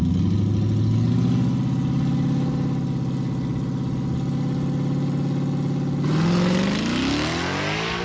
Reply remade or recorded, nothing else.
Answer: recorded